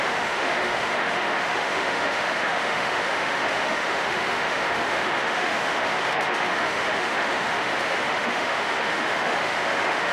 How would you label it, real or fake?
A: fake